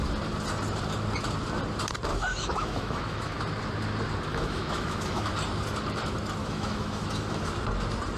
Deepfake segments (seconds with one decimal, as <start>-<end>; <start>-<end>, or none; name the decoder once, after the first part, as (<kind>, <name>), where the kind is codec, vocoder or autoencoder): 2.1-3.4 (autoencoder, DAC-VAE); 4.3-5.3; 6.4-7.5